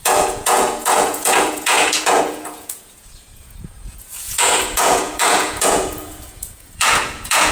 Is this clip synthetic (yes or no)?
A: yes